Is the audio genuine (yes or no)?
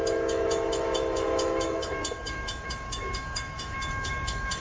no